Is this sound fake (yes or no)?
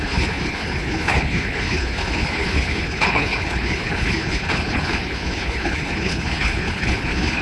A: yes